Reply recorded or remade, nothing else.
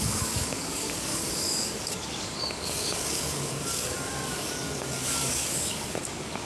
remade